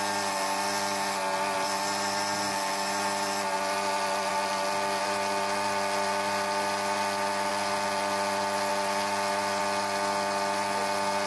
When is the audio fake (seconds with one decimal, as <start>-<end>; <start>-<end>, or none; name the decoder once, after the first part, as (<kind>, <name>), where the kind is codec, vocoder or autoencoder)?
none